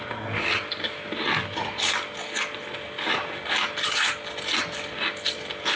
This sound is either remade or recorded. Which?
recorded